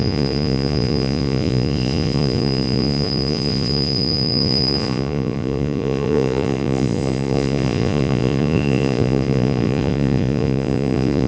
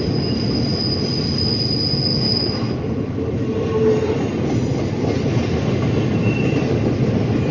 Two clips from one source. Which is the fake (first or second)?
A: first